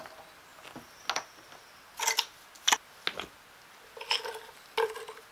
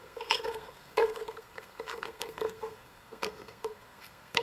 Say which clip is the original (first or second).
first